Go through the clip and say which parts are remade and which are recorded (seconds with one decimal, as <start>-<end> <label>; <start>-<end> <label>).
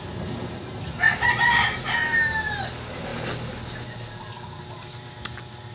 0.0-5.7 recorded